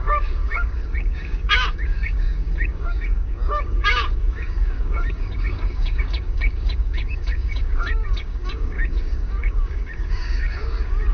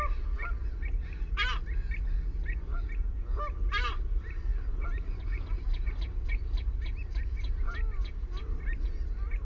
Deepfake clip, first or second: first